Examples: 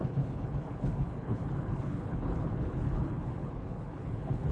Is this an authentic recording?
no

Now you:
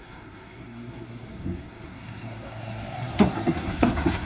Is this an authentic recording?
no